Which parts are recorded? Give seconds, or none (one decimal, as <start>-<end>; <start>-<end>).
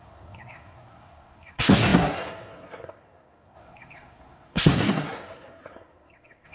none